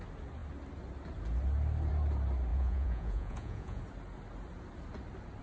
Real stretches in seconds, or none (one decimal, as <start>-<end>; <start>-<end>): 0.0-2.5; 3.8-5.4